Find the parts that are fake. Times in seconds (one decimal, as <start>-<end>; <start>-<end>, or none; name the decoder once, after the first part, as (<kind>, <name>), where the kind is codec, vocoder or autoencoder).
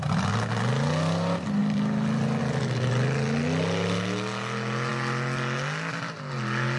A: none